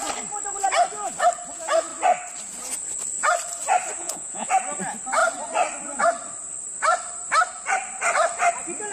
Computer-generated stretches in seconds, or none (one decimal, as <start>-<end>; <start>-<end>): 4.0-4.5